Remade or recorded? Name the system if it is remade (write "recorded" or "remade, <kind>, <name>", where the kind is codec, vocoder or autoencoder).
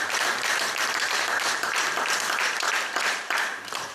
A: remade, vocoder, BigVGAN v2